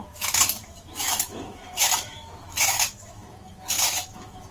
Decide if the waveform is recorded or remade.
remade